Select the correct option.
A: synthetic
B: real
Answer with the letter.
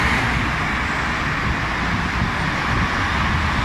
B